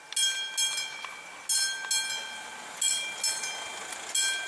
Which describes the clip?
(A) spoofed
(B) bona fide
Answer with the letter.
B